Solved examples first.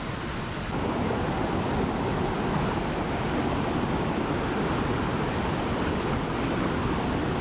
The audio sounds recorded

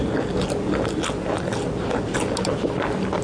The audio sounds recorded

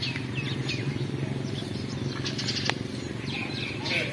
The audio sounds recorded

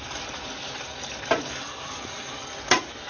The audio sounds recorded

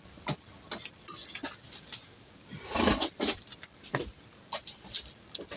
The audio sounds recorded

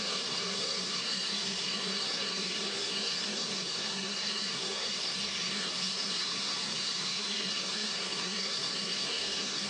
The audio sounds remade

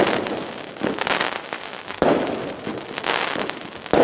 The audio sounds recorded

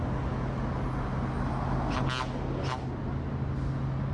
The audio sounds recorded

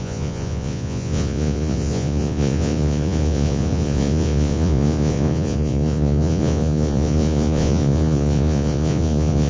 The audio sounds remade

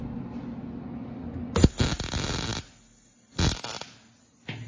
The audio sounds recorded